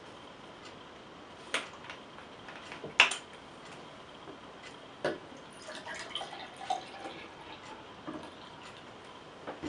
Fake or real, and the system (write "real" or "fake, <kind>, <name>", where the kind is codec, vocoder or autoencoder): real